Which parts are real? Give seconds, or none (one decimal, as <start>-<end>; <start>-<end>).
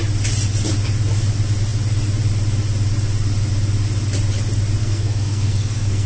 0.0-4.8